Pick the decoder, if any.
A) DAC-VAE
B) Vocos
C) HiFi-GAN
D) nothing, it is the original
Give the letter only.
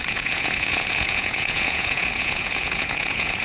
B